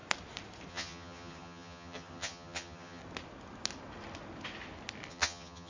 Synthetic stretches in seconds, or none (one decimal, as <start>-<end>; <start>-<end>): 0.7-3.0; 5.1-5.7